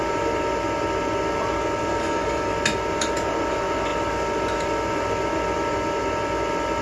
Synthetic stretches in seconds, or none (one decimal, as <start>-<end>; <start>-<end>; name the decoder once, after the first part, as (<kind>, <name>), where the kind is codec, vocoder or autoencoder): 1.9-2.5 (codec, DAC)